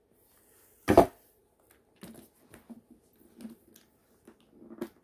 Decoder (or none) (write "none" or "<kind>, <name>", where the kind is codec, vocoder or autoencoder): none